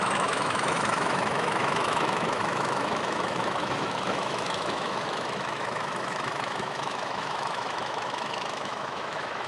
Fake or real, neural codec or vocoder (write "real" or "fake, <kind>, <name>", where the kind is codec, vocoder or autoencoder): fake, autoencoder, DAC-VAE